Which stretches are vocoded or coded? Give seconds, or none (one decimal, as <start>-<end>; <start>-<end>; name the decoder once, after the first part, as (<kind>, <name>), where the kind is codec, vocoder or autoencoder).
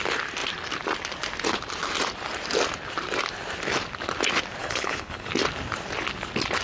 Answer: 4.6-5.3 (codec, HILCodec)